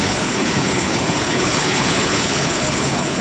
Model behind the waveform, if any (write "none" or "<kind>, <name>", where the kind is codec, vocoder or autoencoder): codec, HILCodec